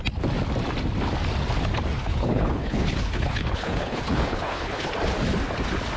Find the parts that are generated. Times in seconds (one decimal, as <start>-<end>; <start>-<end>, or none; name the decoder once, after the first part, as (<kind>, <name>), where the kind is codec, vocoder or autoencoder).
1.9-4.9 (codec, HILCodec)